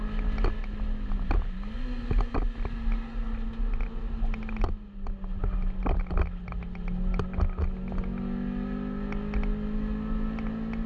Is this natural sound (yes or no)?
yes